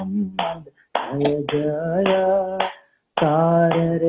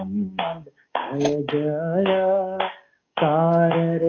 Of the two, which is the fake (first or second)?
second